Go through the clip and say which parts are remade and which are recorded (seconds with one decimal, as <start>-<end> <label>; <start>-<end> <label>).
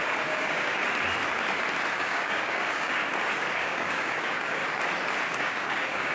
0.0-0.8 remade; 0.8-1.9 recorded; 1.9-3.0 remade; 3.0-3.5 recorded; 3.5-4.6 remade; 4.6-5.4 recorded; 5.4-6.1 remade